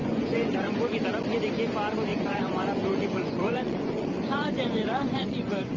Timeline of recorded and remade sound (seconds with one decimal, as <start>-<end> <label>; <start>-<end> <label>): 0.0-0.7 remade; 0.7-2.1 recorded; 2.1-5.8 remade